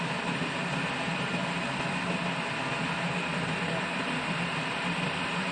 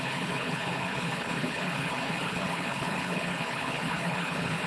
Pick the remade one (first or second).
second